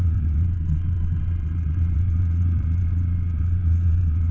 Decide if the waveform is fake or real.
fake